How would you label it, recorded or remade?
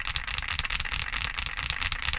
recorded